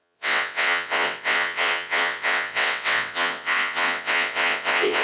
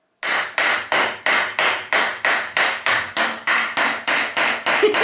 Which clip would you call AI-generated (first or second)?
first